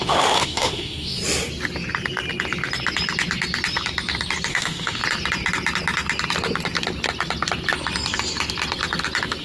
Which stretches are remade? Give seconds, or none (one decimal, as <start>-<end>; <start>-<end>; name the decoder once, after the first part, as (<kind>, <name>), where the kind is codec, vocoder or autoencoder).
0.0-1.2 (autoencoder, DAC-VAE); 4.5-5.0